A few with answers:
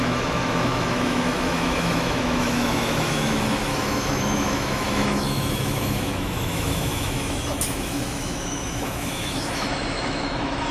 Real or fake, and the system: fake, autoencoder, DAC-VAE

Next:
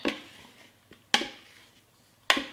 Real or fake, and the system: real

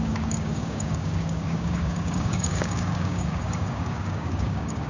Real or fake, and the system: fake, codec, DAC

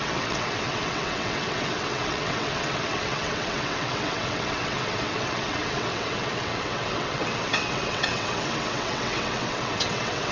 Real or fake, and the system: fake, vocoder, WaveNeXt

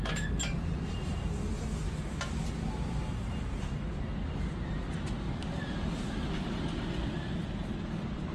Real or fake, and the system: real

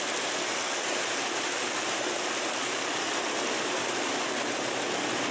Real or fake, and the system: real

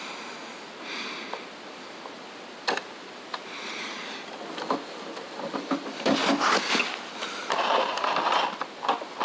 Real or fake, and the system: real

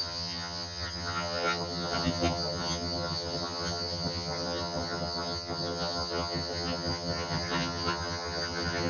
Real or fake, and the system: fake, vocoder, HiFi-GAN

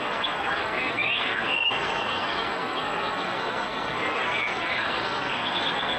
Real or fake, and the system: fake, codec, SNAC